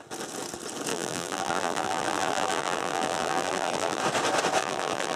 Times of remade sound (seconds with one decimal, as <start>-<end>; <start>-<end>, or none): 0.9-4.0; 4.6-5.2